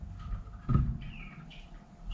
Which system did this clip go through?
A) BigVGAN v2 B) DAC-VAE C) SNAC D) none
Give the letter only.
D